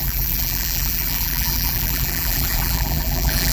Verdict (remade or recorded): remade